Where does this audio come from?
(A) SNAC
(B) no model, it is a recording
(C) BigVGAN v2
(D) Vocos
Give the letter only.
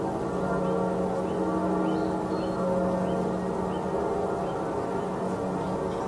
B